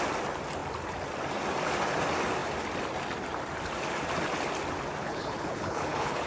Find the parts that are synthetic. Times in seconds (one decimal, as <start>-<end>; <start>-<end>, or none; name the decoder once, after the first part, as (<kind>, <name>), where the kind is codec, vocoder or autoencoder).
5.0-6.3 (codec, HILCodec)